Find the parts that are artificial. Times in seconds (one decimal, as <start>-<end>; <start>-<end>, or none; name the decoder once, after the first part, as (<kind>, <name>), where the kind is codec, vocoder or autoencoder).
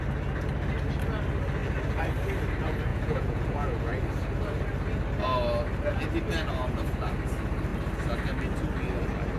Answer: 2.9-4.0 (vocoder, Vocos)